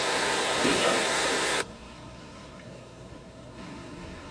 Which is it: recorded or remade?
remade